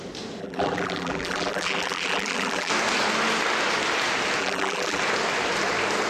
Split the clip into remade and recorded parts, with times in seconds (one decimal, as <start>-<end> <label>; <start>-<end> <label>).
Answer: 0.0-0.4 recorded; 0.4-2.7 remade; 2.7-4.4 recorded; 4.4-5.0 remade; 5.0-6.1 recorded